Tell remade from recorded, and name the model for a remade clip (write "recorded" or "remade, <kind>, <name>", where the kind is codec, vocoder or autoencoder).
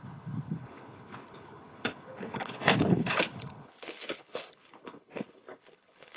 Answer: remade, codec, HILCodec